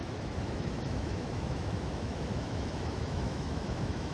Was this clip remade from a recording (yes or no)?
yes